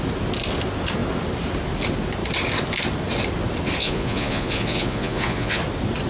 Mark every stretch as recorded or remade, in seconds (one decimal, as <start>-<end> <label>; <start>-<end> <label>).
0.0-3.8 recorded; 3.8-5.6 remade; 5.6-6.1 recorded